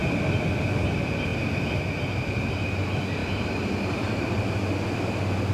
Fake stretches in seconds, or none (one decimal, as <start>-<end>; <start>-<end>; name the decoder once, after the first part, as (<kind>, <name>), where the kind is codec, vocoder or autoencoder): 3.2-4.7 (vocoder, BigVGAN v2)